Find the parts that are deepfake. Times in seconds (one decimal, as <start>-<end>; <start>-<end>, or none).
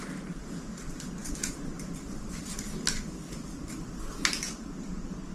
none